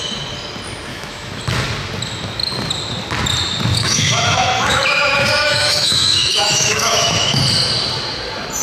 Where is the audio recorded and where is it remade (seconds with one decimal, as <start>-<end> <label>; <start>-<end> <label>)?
0.0-0.9 recorded; 0.9-1.4 remade; 1.4-3.7 recorded; 3.7-7.4 remade; 7.4-8.6 recorded